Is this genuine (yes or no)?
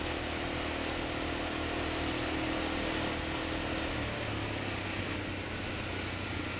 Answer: yes